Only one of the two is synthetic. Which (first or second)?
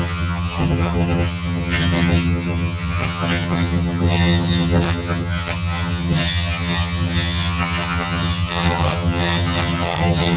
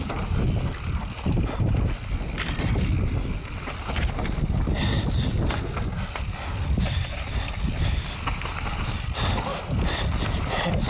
first